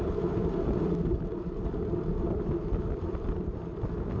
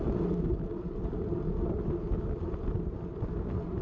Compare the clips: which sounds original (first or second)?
second